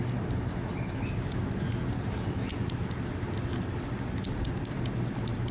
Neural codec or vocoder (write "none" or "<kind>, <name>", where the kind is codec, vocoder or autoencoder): none